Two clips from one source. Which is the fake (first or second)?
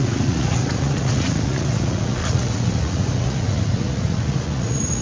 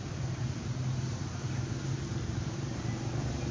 first